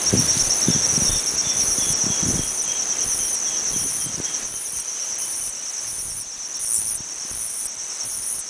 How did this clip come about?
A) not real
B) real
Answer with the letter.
B